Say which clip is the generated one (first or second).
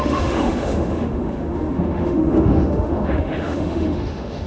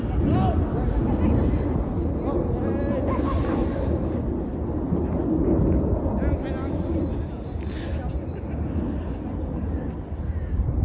first